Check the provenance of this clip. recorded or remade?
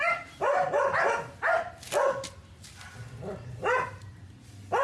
recorded